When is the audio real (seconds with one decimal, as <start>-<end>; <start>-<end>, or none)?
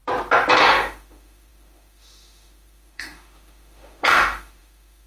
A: 0.0-0.6